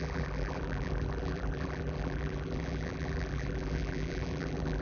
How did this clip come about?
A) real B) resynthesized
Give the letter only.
B